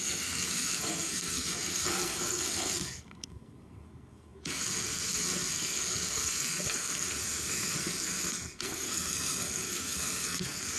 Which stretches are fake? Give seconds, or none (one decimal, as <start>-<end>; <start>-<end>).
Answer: 0.0-10.8